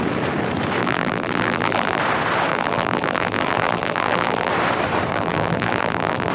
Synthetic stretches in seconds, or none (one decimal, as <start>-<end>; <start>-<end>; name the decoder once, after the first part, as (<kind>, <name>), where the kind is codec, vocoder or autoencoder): 0.8-2.0 (vocoder, BigVGAN v2); 2.5-4.5; 5.1-6.3